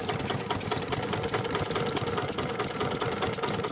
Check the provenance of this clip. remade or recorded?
recorded